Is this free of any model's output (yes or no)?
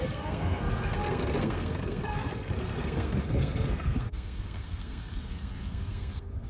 no